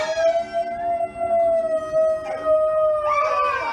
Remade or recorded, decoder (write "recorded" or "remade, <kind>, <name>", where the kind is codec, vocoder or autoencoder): recorded